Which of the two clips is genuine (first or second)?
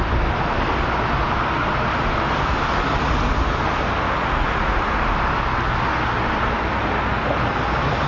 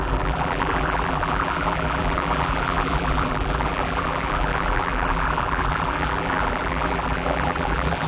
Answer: first